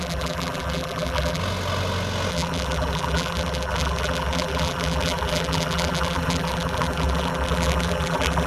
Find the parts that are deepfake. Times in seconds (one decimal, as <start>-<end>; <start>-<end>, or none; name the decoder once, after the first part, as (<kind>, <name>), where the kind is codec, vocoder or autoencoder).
0.0-1.4 (vocoder, BigVGAN v2); 2.3-8.5